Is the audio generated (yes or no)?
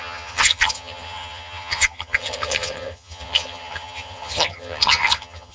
yes